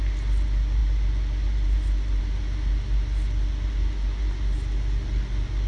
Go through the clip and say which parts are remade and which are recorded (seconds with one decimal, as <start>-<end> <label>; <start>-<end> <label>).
0.0-5.7 recorded